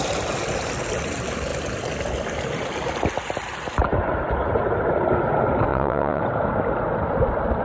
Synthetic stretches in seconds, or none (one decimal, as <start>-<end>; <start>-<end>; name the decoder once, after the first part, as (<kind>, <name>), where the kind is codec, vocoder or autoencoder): 5.7-6.2 (vocoder, Vocos)